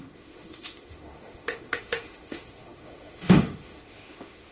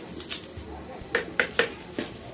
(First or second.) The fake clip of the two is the first